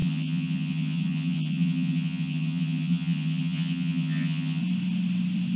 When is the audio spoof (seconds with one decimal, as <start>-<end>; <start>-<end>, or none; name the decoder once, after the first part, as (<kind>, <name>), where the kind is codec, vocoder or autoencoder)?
0.0-4.6 (vocoder, HiFi-GAN)